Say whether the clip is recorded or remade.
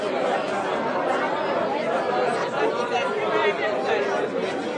recorded